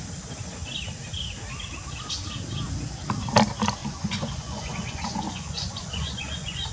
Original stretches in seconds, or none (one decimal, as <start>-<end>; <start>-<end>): 0.0-3.8